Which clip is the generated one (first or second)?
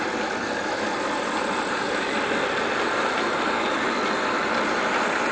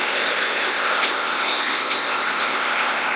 second